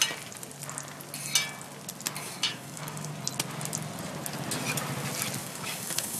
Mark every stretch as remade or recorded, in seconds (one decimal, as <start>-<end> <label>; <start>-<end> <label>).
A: 0.0-2.2 recorded; 2.2-3.1 remade; 3.1-5.4 recorded; 5.4-6.2 remade